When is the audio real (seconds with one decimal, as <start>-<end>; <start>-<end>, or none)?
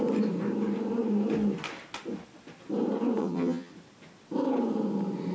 0.0-3.2; 3.7-5.3